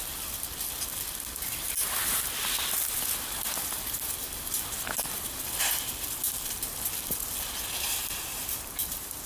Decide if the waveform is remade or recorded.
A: recorded